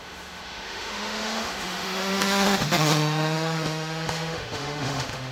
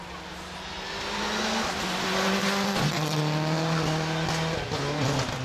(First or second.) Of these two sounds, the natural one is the second